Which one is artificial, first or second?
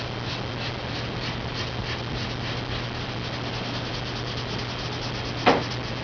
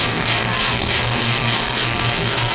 second